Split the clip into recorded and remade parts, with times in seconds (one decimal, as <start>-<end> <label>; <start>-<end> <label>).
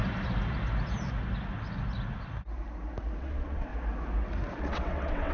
0.0-3.2 recorded; 3.2-3.7 remade; 3.7-4.6 recorded; 4.6-5.3 remade